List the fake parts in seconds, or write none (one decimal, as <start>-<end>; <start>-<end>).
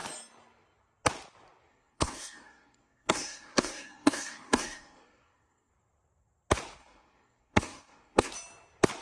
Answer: 1.7-5.7; 6.8-8.3